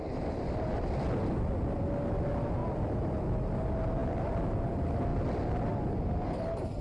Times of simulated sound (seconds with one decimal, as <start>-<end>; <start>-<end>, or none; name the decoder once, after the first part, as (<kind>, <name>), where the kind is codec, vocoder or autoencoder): none